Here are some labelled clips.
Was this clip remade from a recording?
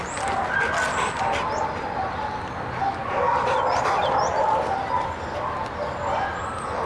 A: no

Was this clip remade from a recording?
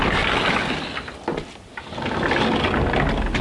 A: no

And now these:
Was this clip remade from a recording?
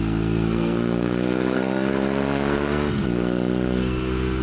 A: yes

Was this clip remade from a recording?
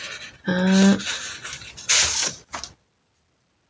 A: no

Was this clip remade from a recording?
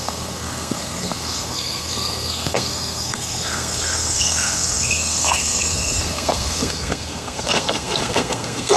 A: yes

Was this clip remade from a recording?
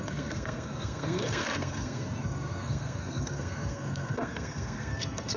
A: yes